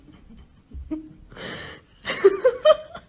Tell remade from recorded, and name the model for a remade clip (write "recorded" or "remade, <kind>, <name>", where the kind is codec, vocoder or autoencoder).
recorded